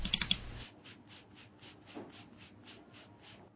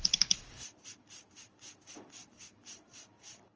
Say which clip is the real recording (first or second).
first